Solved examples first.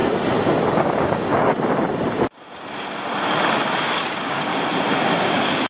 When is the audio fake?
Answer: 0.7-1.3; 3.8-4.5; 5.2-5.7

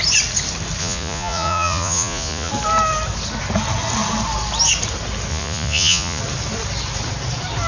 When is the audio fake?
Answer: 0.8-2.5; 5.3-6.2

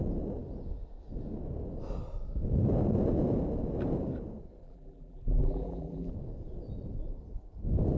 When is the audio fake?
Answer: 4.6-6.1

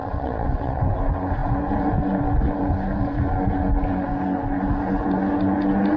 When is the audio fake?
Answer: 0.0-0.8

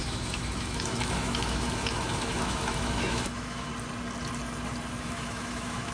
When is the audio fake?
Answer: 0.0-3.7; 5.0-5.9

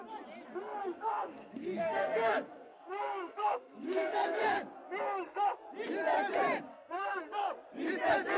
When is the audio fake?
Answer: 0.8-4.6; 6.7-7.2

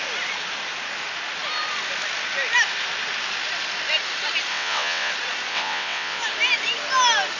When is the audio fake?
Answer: 4.5-5.1; 5.5-6.2

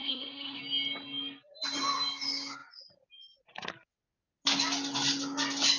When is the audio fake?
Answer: 0.0-0.6